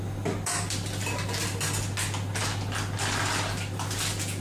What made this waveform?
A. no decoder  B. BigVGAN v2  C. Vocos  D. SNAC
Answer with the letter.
A